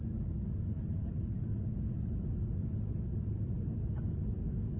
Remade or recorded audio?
recorded